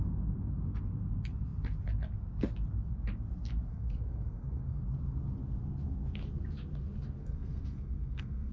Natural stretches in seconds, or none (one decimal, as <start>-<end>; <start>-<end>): 0.0-3.7; 4.8-7.2